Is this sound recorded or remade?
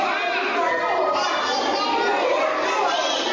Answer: recorded